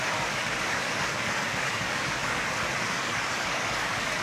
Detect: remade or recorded remade